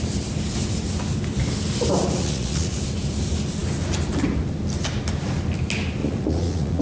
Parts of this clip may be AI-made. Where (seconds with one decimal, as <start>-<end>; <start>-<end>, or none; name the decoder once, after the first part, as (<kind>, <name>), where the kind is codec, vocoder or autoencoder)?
2.0-2.8 (vocoder, Vocos); 6.0-6.8